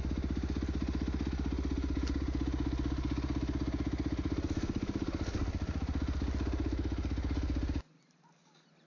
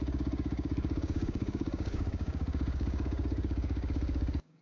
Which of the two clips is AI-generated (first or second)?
second